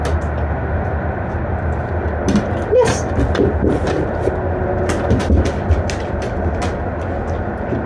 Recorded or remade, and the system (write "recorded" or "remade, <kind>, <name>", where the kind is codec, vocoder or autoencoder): recorded